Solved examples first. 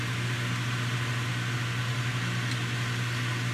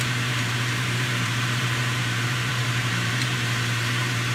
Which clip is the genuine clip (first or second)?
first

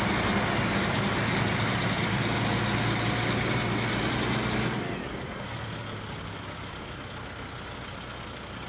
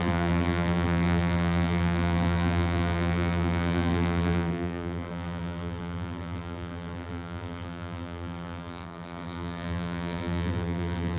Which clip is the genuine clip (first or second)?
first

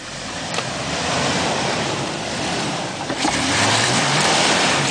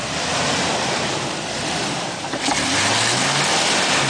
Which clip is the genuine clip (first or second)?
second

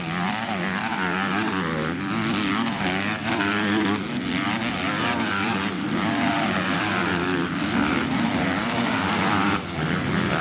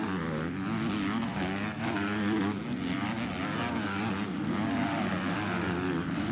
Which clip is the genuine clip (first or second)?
second